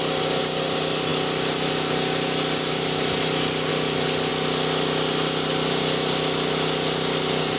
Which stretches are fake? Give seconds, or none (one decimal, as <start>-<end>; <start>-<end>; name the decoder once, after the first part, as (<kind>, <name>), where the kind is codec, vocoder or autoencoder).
none